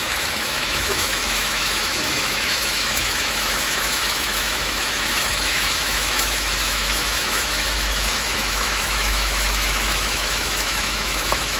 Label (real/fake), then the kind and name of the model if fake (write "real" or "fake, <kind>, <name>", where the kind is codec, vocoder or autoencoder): fake, autoencoder, DAC-VAE